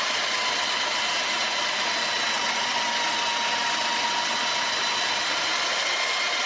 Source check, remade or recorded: recorded